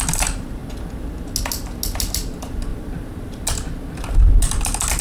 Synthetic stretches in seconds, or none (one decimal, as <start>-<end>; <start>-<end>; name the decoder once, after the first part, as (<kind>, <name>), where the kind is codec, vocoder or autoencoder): 2.7-3.3 (vocoder, BigVGAN v2)

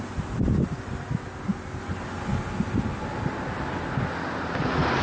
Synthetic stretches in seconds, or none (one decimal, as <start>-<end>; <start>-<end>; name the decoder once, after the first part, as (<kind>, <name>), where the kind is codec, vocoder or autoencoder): none